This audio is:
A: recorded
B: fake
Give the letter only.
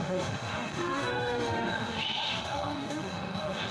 B